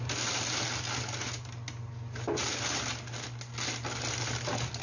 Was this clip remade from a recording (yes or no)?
no